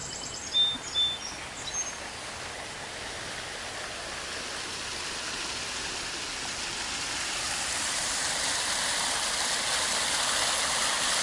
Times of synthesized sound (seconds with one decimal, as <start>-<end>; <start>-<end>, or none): none

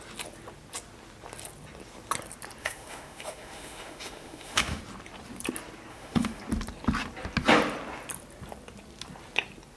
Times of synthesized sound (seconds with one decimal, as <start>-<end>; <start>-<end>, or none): 2.6-4.8; 5.9-6.4

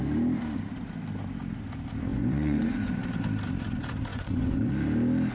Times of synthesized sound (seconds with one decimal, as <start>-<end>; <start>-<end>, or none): 2.1-2.9; 4.1-4.7

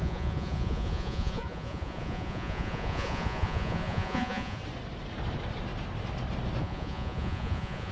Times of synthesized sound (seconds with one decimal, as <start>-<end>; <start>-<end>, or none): 0.0-4.6; 6.6-7.9

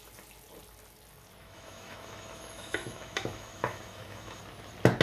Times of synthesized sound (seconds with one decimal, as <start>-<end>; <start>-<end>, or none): 1.4-4.4

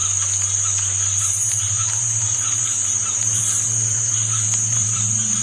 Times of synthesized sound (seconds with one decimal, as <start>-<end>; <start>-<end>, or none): 1.2-5.4

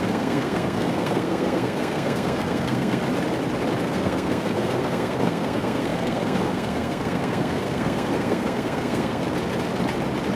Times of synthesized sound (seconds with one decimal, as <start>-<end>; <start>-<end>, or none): 0.0-3.0; 3.8-9.2

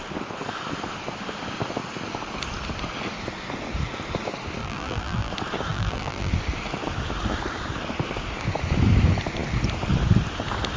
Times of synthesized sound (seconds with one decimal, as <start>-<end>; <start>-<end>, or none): 4.6-5.3; 5.7-6.3